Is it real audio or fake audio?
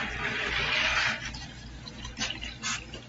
real